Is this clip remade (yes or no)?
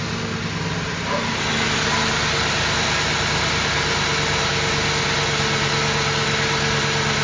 no